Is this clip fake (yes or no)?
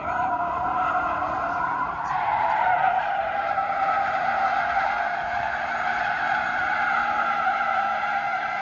yes